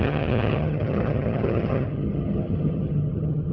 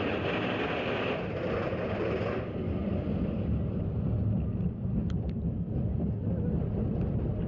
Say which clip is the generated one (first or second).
first